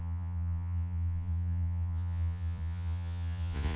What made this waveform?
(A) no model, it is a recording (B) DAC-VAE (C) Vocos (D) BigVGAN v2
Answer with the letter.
C